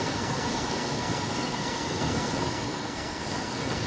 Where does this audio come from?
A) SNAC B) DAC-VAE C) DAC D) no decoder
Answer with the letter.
A